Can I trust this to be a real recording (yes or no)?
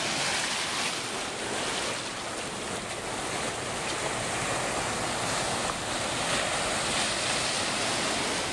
yes